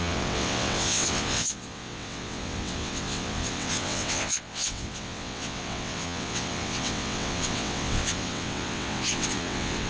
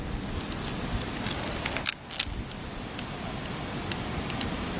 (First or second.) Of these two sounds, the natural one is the second